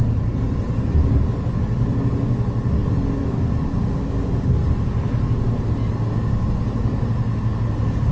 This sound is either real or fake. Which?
real